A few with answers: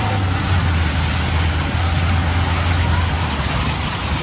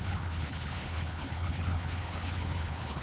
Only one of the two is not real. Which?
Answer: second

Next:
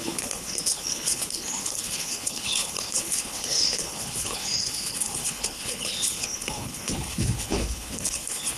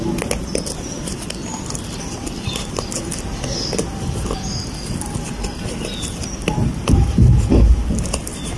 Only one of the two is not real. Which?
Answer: first